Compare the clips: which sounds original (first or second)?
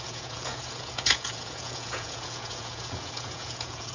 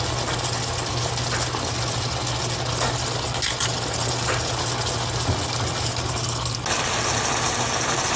second